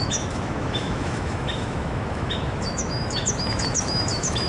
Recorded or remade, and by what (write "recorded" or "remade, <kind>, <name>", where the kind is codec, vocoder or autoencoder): remade, autoencoder, DAC-VAE